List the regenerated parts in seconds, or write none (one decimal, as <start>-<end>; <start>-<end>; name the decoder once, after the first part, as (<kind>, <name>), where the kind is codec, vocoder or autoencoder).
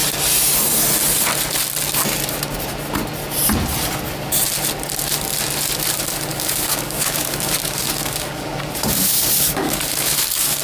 6.3-10.6 (codec, DAC)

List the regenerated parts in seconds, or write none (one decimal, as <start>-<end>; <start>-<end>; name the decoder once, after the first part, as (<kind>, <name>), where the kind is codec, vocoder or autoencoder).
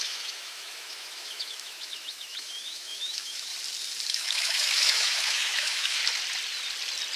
0.0-3.5 (autoencoder, DAC-VAE); 4.1-6.0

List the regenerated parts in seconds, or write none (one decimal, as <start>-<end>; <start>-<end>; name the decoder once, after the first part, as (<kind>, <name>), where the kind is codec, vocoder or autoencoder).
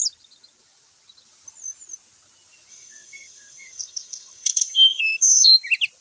2.7-5.5 (codec, SNAC)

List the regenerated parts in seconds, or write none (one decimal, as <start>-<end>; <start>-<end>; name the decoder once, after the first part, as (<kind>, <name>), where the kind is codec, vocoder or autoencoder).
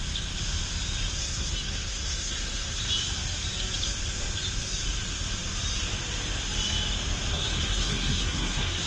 1.2-2.8 (codec, SNAC); 7.3-8.9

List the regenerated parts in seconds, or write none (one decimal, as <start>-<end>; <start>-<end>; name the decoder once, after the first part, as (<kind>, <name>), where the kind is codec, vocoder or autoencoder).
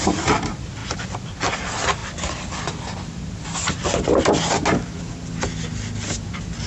none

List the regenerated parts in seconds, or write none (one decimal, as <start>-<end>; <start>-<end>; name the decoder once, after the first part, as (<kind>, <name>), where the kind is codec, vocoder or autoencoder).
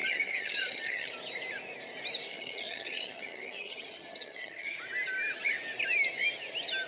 0.0-1.1 (vocoder, HiFi-GAN); 2.3-4.8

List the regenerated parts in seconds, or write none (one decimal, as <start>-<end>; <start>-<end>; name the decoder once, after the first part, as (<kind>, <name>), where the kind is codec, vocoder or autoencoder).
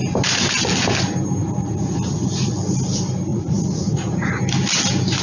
1.4-2.5 (vocoder, Vocos); 3.3-4.4